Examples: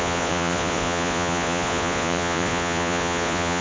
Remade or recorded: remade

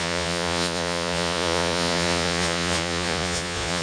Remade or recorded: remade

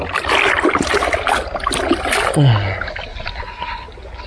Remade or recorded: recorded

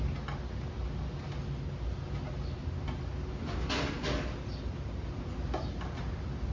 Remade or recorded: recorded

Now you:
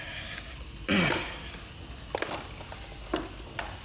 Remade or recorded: recorded